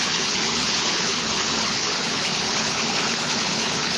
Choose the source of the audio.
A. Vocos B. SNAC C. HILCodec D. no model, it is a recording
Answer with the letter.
C